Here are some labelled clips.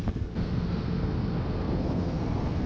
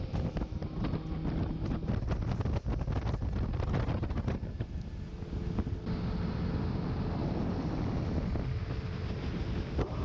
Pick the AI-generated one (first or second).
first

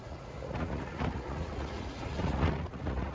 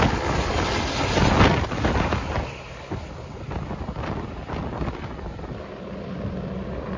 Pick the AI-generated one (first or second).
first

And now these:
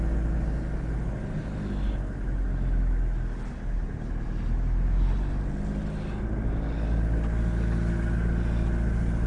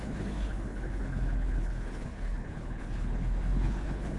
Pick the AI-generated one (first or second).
second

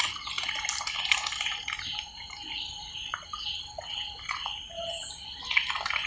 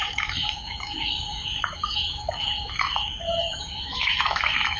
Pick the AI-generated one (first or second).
second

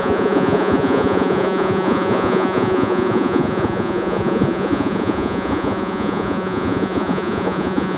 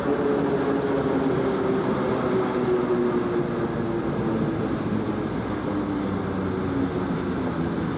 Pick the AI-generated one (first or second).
first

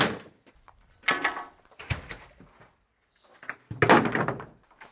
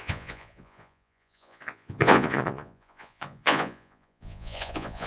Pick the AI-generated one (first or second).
second